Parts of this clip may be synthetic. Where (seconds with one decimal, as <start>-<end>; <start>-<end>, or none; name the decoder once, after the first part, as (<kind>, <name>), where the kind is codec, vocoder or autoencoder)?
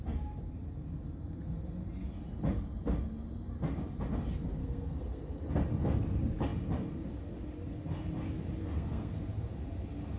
4.6-5.3 (codec, SNAC); 8.6-9.2